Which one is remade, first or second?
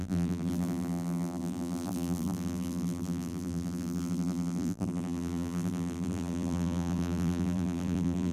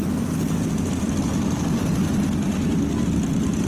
first